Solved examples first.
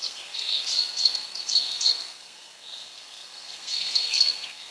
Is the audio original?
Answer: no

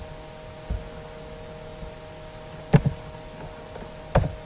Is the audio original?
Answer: yes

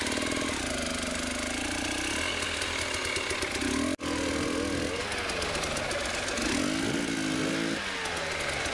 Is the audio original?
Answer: yes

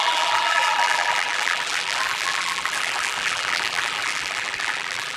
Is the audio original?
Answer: no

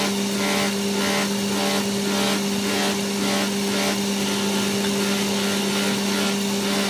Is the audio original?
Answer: yes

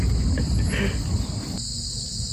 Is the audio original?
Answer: yes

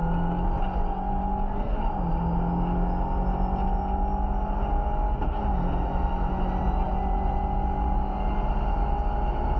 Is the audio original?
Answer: yes